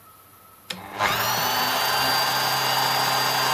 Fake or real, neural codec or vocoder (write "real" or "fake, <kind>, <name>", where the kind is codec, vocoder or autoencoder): real